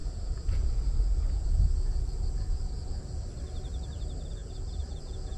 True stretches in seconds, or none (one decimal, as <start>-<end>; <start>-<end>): 3.2-4.4

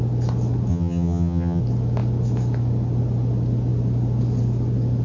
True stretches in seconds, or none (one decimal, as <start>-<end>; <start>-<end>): 0.0-0.7; 1.6-5.0

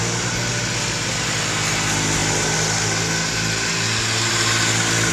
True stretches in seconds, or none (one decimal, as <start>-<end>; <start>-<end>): 0.0-5.1

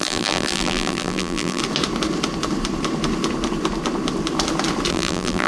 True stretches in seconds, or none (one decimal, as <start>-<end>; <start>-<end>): 1.6-4.9

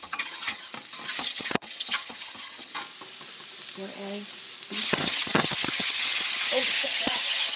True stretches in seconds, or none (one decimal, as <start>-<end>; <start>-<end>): 0.7-1.2; 2.7-4.8

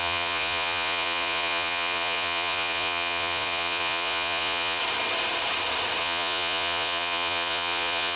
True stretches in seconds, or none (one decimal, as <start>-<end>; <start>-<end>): 4.8-6.0

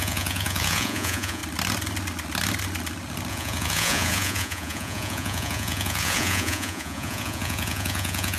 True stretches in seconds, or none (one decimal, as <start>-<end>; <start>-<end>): 1.4-3.3